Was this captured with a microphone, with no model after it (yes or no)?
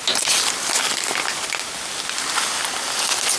yes